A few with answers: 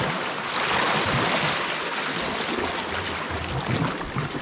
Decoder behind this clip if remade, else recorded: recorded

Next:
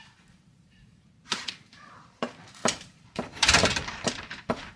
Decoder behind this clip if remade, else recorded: remade, vocoder, BigVGAN v2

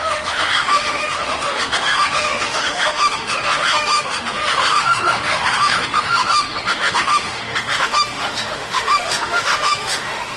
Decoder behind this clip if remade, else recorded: remade, autoencoder, DAC-VAE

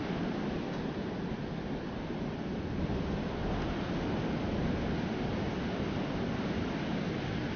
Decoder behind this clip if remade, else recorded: recorded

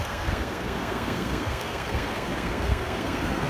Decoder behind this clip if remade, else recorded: remade, codec, SNAC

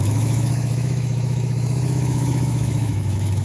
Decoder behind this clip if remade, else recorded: remade, autoencoder, DAC-VAE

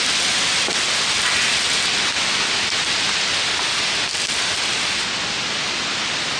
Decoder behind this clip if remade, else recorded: recorded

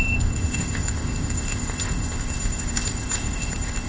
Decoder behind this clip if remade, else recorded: remade, codec, ZipCodec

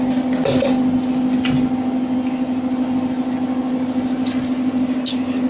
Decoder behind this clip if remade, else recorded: recorded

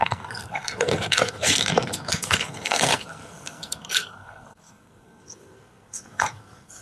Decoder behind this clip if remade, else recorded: remade, codec, SNAC